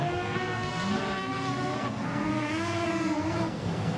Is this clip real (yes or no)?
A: no